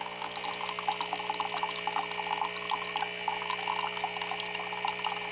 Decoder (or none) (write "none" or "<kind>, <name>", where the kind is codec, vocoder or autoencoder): none